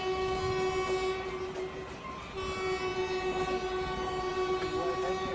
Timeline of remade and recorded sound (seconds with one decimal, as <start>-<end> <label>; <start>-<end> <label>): 0.0-5.3 recorded